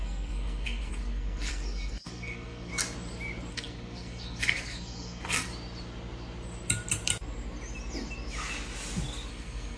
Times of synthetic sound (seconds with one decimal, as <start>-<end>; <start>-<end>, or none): 0.0-2.7; 3.5-5.5; 9.3-9.8